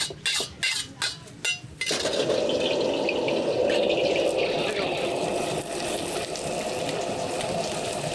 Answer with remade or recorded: recorded